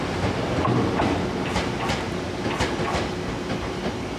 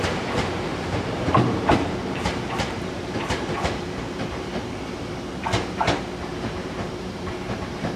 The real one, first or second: first